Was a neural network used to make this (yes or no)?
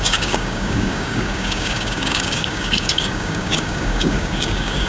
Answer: yes